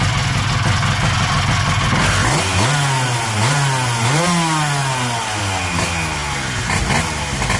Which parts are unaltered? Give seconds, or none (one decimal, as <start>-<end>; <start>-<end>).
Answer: 0.0-7.6